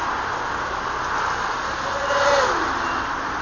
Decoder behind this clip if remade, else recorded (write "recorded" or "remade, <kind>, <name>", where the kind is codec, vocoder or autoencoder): recorded